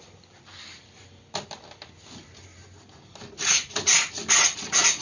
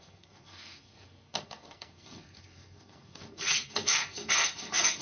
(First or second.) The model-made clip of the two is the second